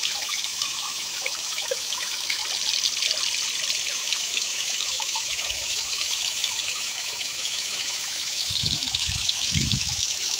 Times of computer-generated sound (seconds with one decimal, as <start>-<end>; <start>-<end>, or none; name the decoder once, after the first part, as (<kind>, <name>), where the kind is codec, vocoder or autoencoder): 0.0-2.4 (autoencoder, DAC-VAE); 3.9-10.4